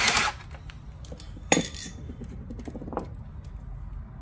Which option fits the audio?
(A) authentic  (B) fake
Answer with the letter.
A